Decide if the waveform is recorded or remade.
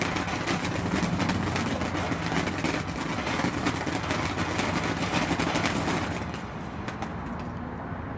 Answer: recorded